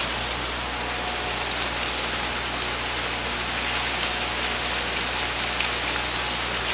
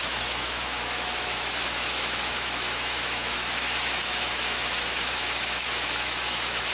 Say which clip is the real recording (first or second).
first